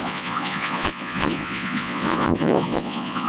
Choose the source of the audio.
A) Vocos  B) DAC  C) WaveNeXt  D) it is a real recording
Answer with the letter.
A